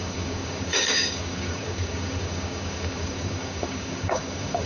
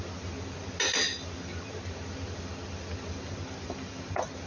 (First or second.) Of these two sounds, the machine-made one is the first